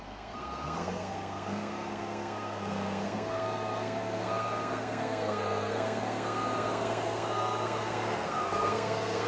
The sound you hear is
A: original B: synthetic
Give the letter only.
B